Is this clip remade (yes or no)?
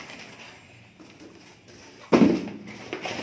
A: no